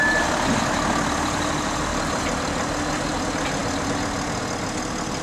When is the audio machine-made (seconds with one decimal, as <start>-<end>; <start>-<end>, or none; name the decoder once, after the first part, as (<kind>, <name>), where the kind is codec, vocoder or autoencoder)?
none